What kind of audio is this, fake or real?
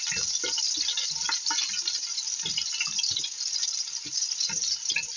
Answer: real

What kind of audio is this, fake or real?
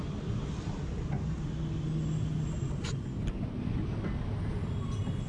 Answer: real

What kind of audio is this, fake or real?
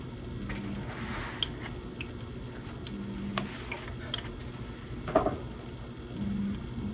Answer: real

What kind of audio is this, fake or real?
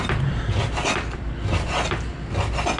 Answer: real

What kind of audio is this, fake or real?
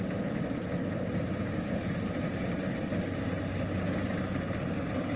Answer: real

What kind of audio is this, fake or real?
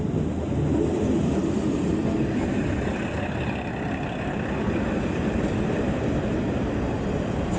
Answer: real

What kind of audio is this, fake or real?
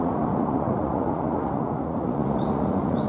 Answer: fake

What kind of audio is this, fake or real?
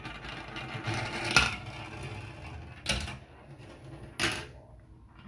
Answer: real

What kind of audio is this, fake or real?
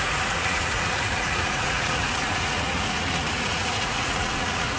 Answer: fake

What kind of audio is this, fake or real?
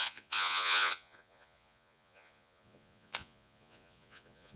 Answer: fake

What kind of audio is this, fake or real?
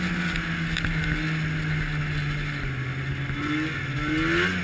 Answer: real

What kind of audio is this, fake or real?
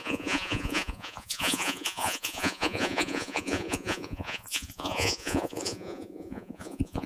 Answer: fake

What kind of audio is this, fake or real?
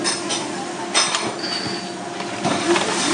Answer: real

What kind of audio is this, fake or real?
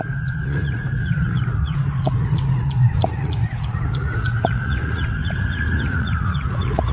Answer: fake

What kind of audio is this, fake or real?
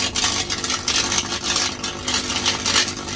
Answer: real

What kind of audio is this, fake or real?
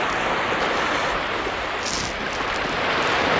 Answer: real